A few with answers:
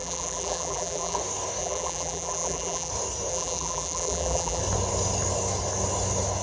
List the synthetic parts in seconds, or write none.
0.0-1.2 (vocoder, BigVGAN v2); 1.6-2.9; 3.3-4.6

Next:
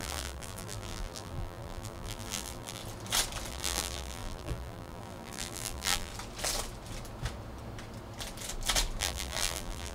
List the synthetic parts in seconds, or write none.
0.0-2.8 (vocoder, BigVGAN v2); 3.5-6.1; 9.0-9.9

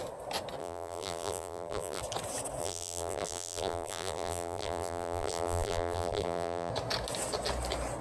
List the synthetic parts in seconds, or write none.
0.6-2.0 (vocoder, BigVGAN v2); 2.6-6.7